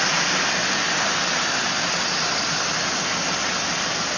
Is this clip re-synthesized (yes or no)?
no